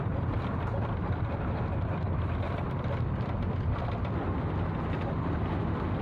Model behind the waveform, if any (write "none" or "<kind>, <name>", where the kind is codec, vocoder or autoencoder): none